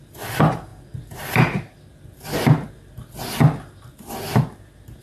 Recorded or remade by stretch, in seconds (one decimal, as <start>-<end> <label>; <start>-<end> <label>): 0.0-5.0 recorded